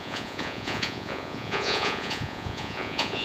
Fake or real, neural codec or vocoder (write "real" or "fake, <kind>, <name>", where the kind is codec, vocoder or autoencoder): fake, vocoder, Vocos